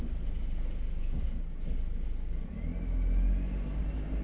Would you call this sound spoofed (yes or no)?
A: no